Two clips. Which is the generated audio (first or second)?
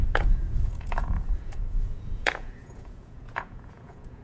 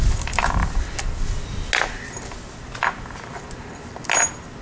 first